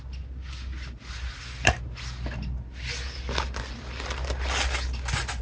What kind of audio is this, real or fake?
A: real